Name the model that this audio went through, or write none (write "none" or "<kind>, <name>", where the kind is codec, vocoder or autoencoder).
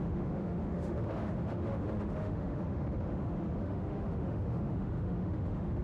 autoencoder, DAC-VAE